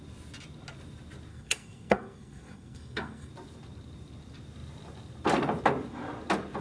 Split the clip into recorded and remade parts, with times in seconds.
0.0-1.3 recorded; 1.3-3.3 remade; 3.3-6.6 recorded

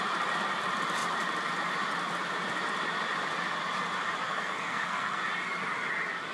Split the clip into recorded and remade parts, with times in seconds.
0.0-4.2 recorded; 4.2-5.2 remade; 5.2-6.3 recorded

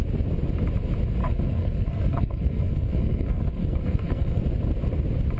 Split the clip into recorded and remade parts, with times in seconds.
0.0-1.2 recorded; 1.2-4.4 remade; 4.4-5.4 recorded